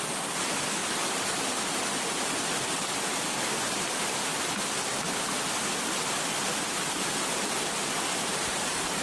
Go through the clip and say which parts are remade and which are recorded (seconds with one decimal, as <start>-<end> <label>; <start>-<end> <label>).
0.0-0.8 remade; 0.8-1.6 recorded; 1.6-4.3 remade; 4.3-7.7 recorded; 7.7-9.0 remade